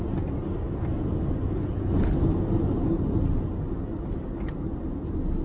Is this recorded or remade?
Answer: recorded